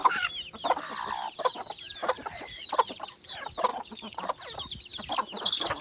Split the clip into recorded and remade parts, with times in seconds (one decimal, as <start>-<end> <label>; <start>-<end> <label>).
0.0-2.0 recorded; 2.0-2.7 remade; 2.7-3.7 recorded; 3.7-4.3 remade; 4.3-5.8 recorded